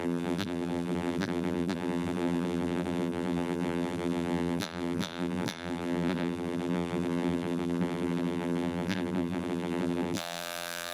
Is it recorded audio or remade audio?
remade